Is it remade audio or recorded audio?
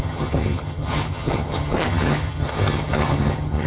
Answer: remade